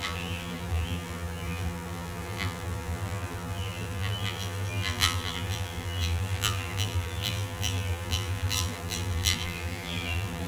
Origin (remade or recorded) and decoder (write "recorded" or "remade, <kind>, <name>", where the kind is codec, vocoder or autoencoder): remade, vocoder, BigVGAN v2